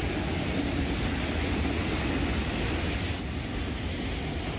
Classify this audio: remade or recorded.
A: recorded